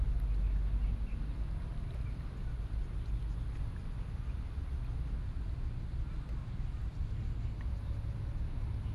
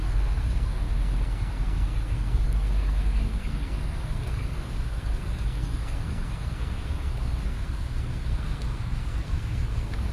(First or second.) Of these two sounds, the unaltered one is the first